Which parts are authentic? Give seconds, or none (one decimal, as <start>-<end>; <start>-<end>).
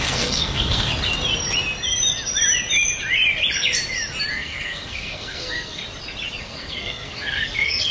0.9-4.3; 5.8-6.4